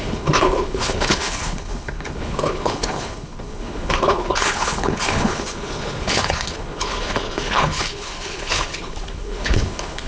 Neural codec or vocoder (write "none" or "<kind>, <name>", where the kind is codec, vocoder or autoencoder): codec, HILCodec